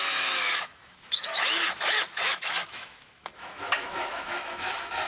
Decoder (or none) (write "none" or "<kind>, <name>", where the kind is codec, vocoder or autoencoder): autoencoder, DAC-VAE